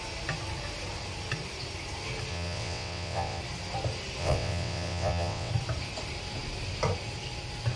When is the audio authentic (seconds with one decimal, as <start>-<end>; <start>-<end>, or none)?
0.0-2.3; 3.4-4.2; 5.5-7.8